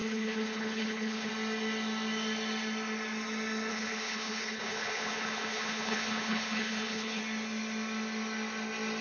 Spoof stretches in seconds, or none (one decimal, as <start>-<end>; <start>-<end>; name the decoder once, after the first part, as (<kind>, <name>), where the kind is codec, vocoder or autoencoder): 0.0-1.3 (codec, HILCodec); 3.7-7.2